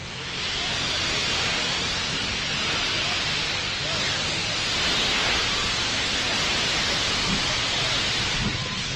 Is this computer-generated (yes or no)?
no